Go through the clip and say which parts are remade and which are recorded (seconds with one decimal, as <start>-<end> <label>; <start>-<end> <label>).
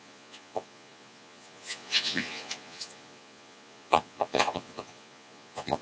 0.0-5.8 remade